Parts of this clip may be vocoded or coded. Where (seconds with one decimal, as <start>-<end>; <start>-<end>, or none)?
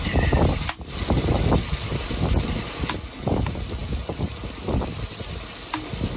0.0-0.9